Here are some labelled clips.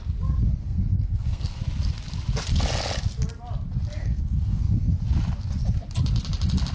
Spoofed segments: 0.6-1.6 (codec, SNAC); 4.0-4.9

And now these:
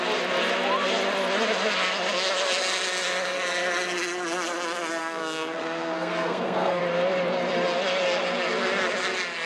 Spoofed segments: 5.0-6.8 (codec, SNAC)

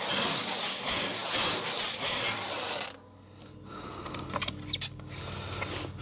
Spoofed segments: none

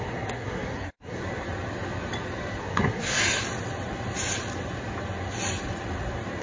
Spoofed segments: 0.0-1.2 (codec, SNAC); 2.6-3.2

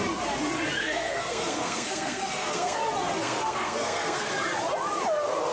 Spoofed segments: 0.8-2.8 (codec, SNAC); 3.2-4.3

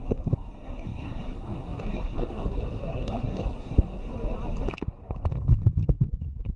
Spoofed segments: 0.0-4.1 (codec, SNAC); 5.8-6.6

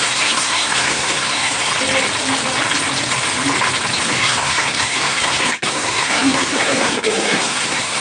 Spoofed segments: 0.0-1.7 (codec, SNAC); 4.0-8.0